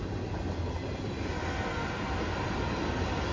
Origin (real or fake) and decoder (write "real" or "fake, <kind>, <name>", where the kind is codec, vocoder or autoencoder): real